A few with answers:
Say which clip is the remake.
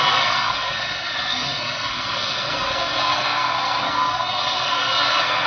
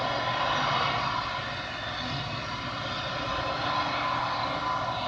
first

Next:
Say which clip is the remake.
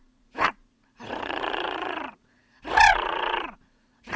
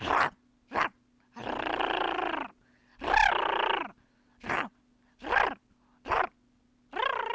first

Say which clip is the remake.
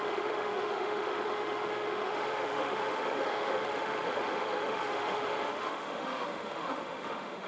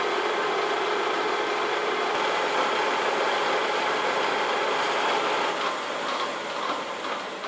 first